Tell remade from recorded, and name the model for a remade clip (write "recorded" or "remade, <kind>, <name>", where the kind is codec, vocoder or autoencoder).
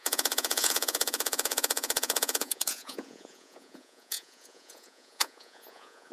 remade, vocoder, Vocos